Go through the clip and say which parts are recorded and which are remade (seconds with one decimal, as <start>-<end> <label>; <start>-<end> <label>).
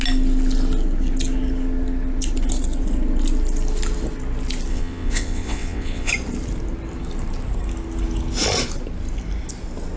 0.0-4.7 recorded; 4.7-6.1 remade; 6.1-10.0 recorded